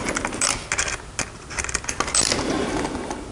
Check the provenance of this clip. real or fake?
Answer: real